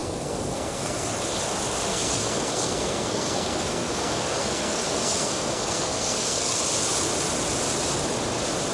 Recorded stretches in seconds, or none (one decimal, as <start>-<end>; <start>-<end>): 1.1-1.9; 6.6-8.7